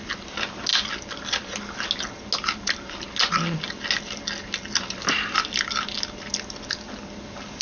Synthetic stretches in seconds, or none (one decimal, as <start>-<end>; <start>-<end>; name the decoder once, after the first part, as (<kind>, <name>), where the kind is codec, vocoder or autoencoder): none